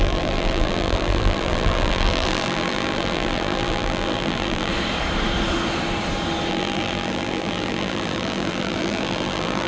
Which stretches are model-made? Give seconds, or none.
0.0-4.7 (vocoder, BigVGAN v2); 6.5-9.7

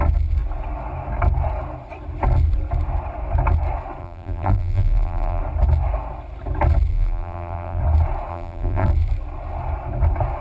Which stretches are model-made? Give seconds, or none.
4.0-5.4 (vocoder, BigVGAN v2); 6.9-7.8; 8.3-8.9

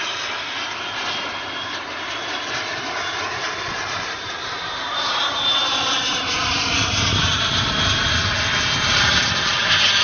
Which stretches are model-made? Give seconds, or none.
0.7-8.0 (vocoder, BigVGAN v2); 8.9-10.0